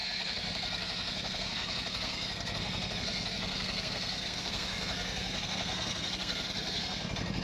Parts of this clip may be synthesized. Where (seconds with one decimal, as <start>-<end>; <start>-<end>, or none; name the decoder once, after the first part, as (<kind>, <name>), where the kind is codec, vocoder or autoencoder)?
0.0-7.4 (codec, SNAC)